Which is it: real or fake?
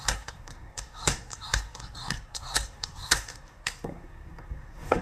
fake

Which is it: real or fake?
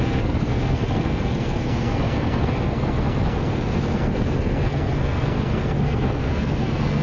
fake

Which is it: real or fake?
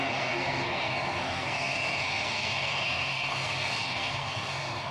fake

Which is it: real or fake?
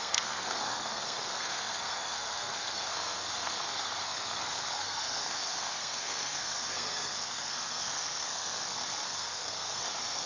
fake